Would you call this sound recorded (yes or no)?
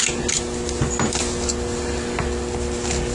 yes